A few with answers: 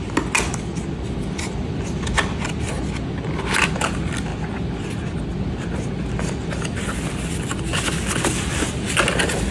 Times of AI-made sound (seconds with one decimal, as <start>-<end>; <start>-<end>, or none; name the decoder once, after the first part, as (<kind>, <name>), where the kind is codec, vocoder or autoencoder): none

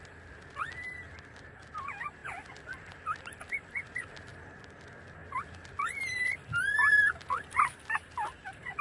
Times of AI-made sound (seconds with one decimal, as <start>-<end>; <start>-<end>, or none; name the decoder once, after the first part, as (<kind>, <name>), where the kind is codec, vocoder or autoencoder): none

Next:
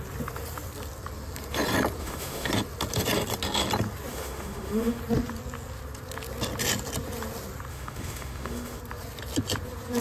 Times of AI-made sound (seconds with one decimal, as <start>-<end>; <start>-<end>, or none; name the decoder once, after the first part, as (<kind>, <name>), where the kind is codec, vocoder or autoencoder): 2.0-2.5 (autoencoder, DAC-VAE); 4.1-5.0; 7.7-8.8

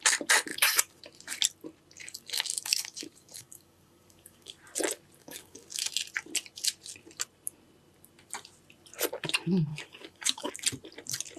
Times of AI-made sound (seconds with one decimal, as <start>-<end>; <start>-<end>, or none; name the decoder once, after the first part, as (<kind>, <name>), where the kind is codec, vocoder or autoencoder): 0.5-1.0 (codec, DAC); 2.0-4.5; 5.2-5.9; 9.7-10.5

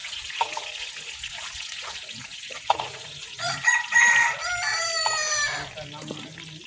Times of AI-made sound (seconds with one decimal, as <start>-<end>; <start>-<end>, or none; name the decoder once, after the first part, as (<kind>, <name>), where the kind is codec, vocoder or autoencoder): 0.0-4.0 (vocoder, Vocos)

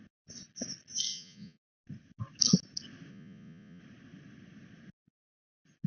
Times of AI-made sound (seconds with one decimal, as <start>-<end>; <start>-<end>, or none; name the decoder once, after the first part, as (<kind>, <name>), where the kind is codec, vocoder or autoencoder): 1.1-1.6 (vocoder, Vocos); 3.1-3.8

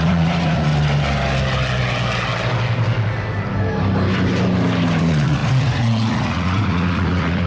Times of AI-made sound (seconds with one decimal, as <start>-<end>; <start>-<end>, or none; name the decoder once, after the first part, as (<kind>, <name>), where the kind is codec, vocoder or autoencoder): 0.0-0.7 (vocoder, Vocos); 5.0-7.5

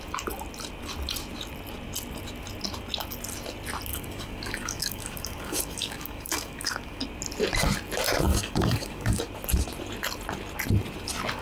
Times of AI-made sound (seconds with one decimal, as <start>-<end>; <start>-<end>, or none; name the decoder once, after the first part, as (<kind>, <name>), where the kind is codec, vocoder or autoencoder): 3.9-7.0 (codec, DAC); 8.3-9.2